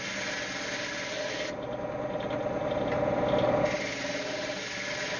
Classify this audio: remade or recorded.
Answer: recorded